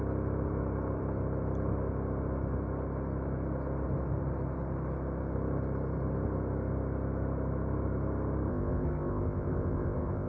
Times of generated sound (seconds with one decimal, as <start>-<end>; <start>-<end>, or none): 8.5-10.3